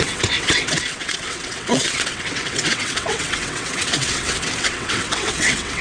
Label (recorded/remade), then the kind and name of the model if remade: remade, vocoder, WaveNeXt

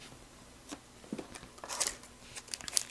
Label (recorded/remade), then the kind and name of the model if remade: recorded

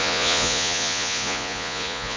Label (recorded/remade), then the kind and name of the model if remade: remade, vocoder, Vocos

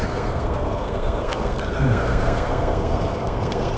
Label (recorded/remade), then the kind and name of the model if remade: remade, codec, SNAC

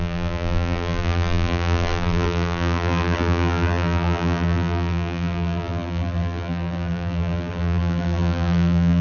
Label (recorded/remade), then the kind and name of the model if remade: remade, vocoder, BigVGAN v2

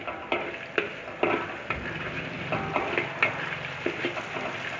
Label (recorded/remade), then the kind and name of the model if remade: recorded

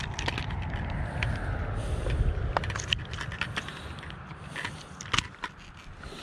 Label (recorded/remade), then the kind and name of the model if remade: recorded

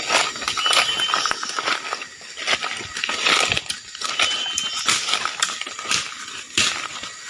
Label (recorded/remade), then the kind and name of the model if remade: recorded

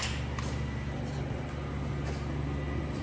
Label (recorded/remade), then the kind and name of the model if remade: recorded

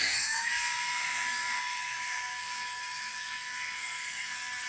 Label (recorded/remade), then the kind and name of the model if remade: remade, codec, SNAC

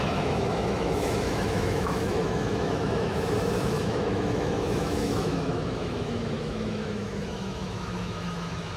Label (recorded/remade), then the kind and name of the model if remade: remade, autoencoder, DAC-VAE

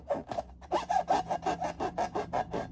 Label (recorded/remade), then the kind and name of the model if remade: recorded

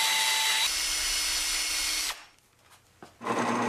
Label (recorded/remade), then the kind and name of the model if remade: recorded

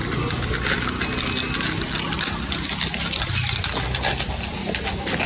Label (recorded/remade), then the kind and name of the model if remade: recorded